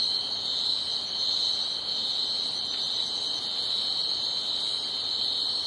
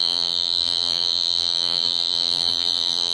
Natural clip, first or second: first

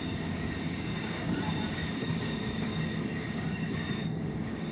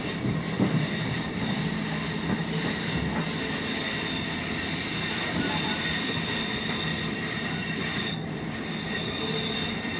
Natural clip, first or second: second